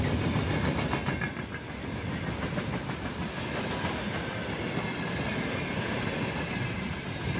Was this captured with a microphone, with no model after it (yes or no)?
yes